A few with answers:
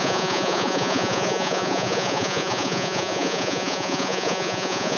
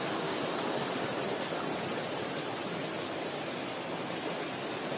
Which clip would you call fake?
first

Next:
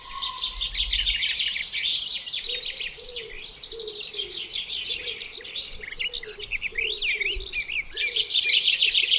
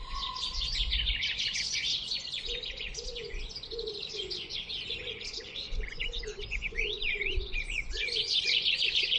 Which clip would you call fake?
second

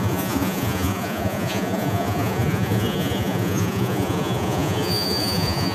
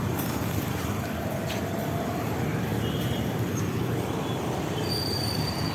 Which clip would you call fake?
first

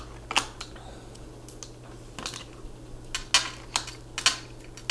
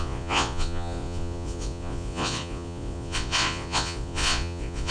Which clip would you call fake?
second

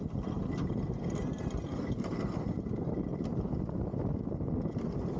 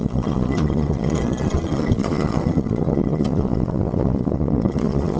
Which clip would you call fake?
second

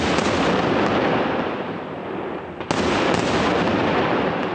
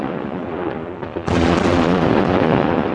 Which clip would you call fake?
second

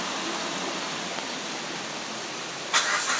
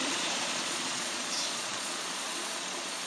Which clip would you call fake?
second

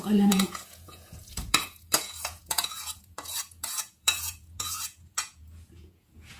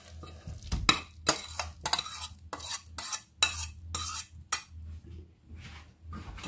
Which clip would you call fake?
first